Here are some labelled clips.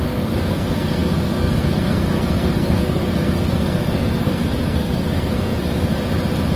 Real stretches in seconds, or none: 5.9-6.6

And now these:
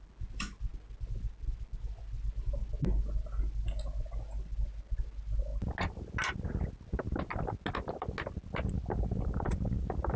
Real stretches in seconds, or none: 0.0-10.2

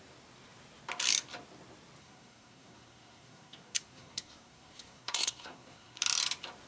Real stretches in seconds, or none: 0.0-2.0; 6.0-6.7

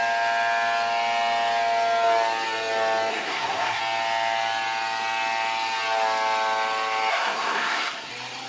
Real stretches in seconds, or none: 0.0-3.1; 3.8-7.1; 8.1-8.5

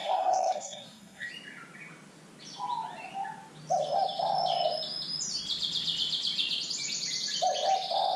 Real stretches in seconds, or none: 1.3-8.2

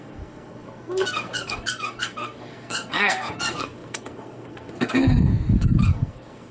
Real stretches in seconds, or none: none